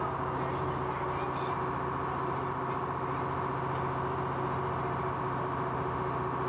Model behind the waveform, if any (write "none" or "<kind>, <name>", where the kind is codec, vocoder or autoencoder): none